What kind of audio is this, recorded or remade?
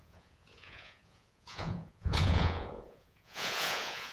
remade